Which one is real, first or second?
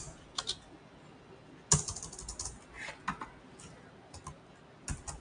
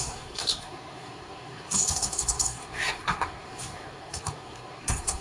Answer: first